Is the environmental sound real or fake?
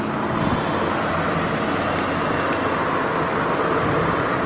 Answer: real